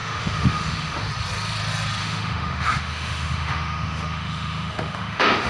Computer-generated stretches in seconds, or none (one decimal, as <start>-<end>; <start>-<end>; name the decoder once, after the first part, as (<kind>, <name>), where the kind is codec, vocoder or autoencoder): 0.0-1.1 (autoencoder, DAC-VAE); 2.0-5.5